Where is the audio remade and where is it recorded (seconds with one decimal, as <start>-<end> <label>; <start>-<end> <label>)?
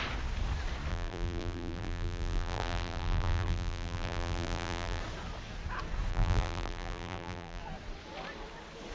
0.0-0.9 recorded; 0.9-5.0 remade; 5.0-6.1 recorded; 6.1-7.6 remade; 7.6-8.9 recorded